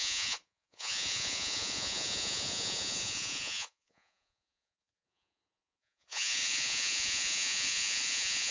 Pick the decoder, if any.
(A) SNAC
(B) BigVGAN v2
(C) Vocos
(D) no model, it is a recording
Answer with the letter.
C